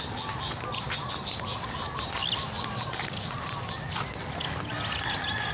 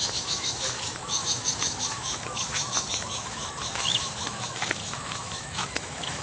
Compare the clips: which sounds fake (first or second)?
second